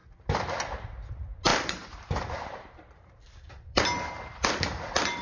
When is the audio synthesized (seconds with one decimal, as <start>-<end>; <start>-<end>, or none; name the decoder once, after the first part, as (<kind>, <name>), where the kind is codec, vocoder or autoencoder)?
1.5-3.8 (vocoder, BigVGAN v2)